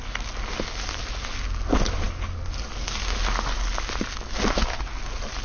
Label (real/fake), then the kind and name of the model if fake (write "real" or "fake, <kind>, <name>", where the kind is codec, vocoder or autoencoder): real